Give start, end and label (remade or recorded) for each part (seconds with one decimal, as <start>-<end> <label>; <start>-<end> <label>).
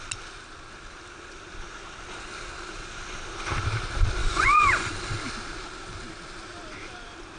0.0-4.2 recorded; 4.2-4.9 remade; 4.9-7.4 recorded